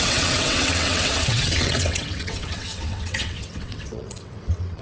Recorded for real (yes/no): no